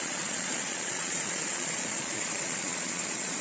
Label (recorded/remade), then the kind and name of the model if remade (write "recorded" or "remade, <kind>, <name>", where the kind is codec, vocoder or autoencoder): remade, vocoder, Vocos